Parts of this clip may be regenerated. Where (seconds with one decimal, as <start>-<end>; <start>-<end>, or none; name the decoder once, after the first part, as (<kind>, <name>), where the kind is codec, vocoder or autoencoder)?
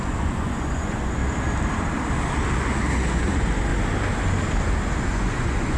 0.0-1.2 (vocoder, Vocos); 3.1-3.7; 5.1-5.8